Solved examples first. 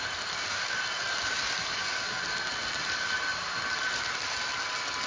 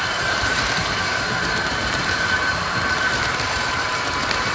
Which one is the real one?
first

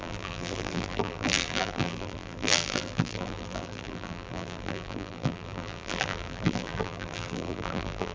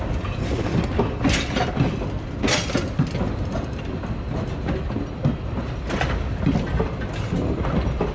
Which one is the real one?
second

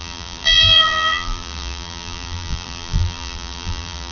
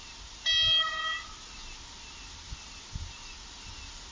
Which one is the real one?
second